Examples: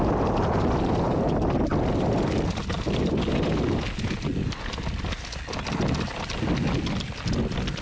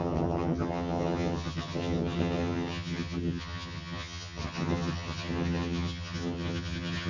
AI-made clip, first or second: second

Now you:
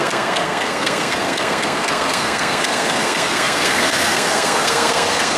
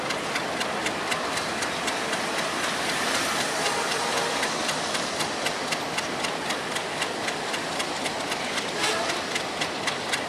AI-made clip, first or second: first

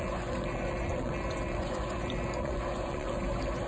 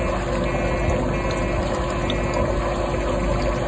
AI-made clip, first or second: first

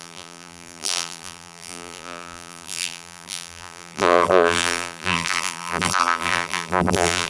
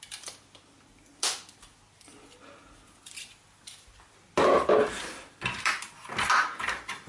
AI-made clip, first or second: first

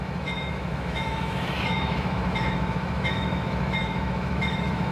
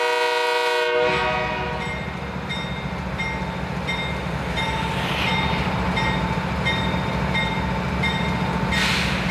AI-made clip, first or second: first